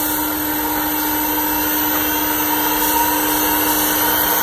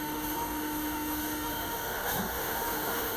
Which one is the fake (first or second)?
second